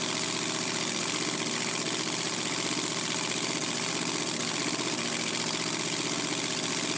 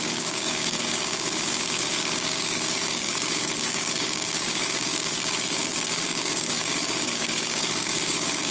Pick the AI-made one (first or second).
second